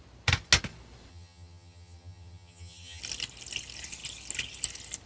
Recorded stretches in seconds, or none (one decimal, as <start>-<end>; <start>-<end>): 0.0-1.1; 3.0-5.1